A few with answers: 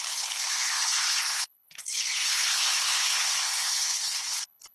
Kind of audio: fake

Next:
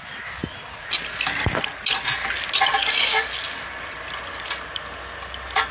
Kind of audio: real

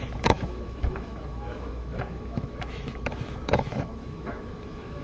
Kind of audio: fake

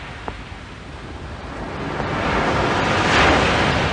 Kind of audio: real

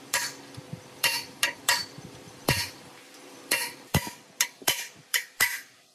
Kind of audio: fake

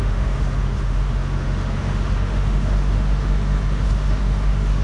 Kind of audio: fake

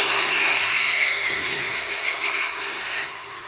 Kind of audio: fake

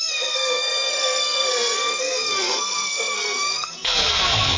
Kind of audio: fake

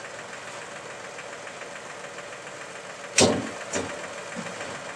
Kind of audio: real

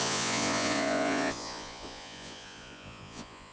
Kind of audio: fake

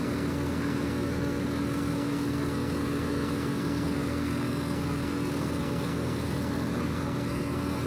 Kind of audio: fake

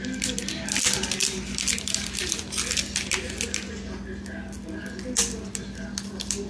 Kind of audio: real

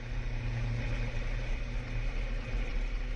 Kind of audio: real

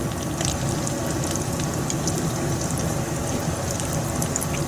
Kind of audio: real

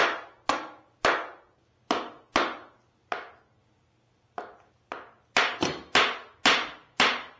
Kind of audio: real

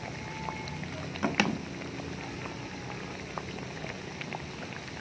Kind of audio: real